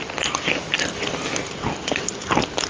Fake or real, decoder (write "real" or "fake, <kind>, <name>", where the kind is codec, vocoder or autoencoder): real